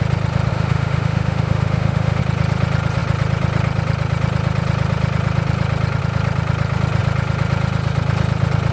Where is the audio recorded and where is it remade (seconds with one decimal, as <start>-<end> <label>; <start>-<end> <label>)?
0.0-0.5 recorded; 0.5-2.2 remade; 2.2-8.7 recorded